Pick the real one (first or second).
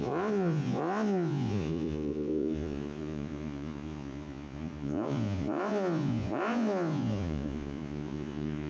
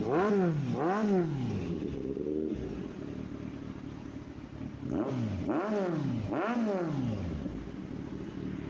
second